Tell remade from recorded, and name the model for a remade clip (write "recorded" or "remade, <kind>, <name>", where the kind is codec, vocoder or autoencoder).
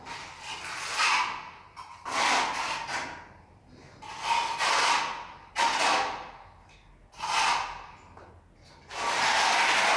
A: recorded